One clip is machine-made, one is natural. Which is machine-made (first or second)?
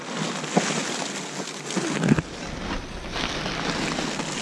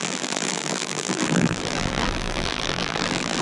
second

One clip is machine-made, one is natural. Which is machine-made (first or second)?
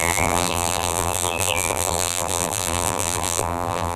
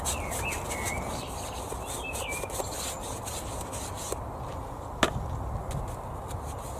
first